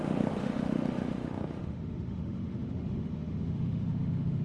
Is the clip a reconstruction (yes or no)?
yes